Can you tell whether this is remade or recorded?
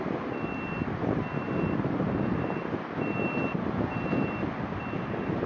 recorded